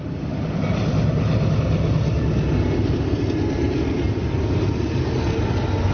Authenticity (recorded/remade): recorded